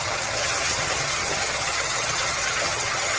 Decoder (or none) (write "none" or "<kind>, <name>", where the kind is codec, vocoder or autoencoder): vocoder, HiFi-GAN